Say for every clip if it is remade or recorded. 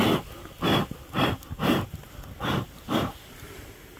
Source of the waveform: recorded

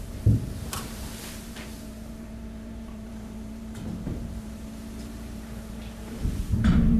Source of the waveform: remade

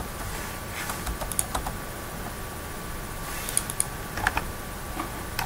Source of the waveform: recorded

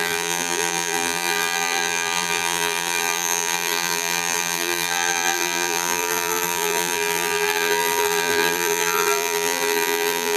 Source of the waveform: remade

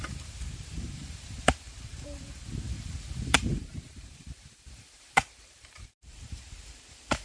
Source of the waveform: remade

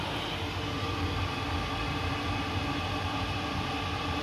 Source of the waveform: recorded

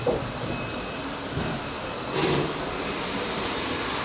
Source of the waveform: remade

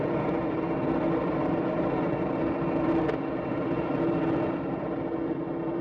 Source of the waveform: remade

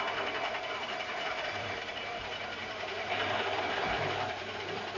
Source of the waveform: remade